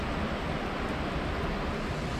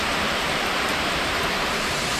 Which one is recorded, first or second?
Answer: first